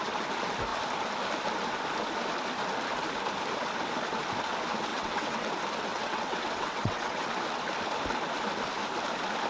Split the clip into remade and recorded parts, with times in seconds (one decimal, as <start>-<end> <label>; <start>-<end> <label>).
0.0-4.9 recorded; 4.9-5.5 remade; 5.5-5.9 recorded; 5.9-7.2 remade; 7.2-9.5 recorded